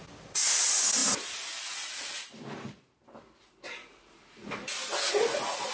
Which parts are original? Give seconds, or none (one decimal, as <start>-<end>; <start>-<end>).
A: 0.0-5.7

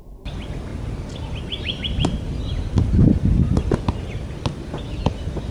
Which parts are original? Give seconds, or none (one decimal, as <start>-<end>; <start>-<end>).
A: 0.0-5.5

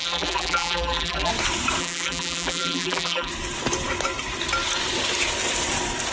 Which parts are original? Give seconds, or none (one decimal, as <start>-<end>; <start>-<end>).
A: 1.3-1.8; 3.3-6.1

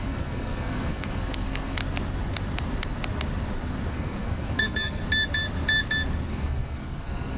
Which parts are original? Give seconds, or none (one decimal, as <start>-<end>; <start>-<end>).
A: 1.8-3.9; 5.0-6.3

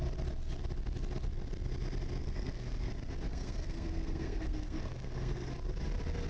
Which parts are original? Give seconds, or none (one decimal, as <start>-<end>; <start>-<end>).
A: 0.0-2.2; 2.9-3.3; 5.5-6.3

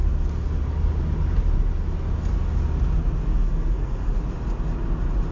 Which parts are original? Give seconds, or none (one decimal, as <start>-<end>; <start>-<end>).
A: 0.0-3.3; 4.1-5.3